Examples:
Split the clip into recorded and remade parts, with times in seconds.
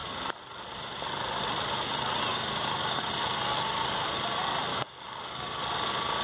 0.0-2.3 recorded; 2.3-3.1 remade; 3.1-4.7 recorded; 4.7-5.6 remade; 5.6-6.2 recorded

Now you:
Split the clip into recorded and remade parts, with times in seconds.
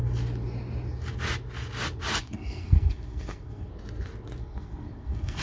0.0-2.2 recorded; 2.2-3.7 remade; 3.7-4.4 recorded; 4.4-5.4 remade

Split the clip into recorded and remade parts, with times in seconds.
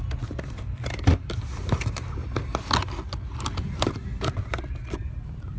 0.0-2.2 remade; 2.2-3.3 recorded; 3.3-5.6 remade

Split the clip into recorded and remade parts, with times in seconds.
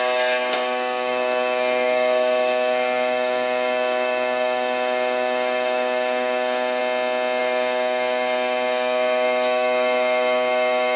0.0-6.8 remade; 6.8-7.4 recorded; 7.4-11.0 remade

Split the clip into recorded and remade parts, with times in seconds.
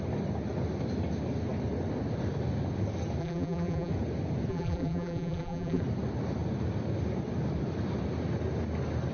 0.0-3.2 recorded; 3.2-3.9 remade; 3.9-4.5 recorded; 4.5-5.8 remade; 5.8-9.1 recorded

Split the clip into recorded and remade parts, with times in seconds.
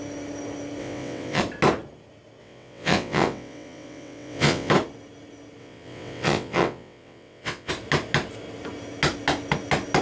0.0-0.8 recorded; 0.8-1.4 remade; 1.4-2.4 recorded; 2.4-4.7 remade; 4.7-5.6 recorded; 5.6-7.7 remade; 7.7-10.0 recorded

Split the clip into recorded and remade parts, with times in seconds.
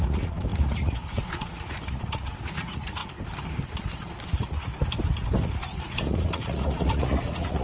0.0-3.0 remade; 3.0-4.3 recorded; 4.3-4.7 remade; 4.7-5.4 recorded; 5.4-7.6 remade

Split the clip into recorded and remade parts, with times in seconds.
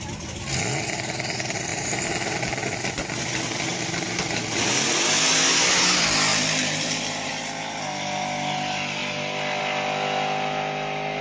0.0-1.7 recorded; 1.7-2.4 remade; 2.4-3.7 recorded; 3.7-4.6 remade; 4.6-6.3 recorded; 6.3-7.3 remade; 7.3-11.2 recorded